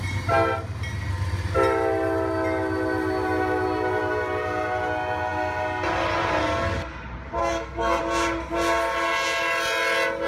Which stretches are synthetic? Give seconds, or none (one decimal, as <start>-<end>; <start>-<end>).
7.4-8.0